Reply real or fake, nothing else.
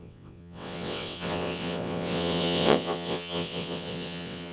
fake